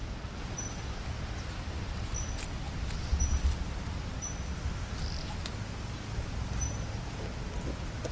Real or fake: real